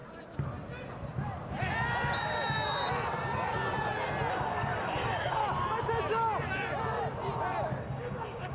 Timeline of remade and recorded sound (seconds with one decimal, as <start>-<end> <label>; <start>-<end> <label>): 0.0-4.3 recorded; 4.3-5.4 remade; 5.4-7.8 recorded; 7.8-8.5 remade